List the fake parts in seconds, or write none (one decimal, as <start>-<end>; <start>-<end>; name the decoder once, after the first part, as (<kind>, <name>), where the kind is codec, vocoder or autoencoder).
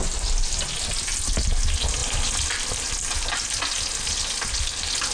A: none